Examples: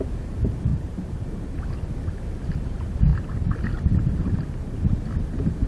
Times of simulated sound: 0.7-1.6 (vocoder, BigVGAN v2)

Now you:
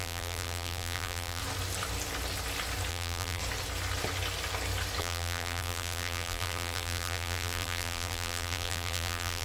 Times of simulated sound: 0.0-1.4 (vocoder, BigVGAN v2); 2.9-3.4; 5.0-9.4

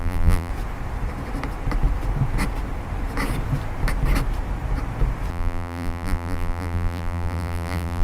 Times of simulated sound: 0.0-0.5 (vocoder, BigVGAN v2); 5.3-8.0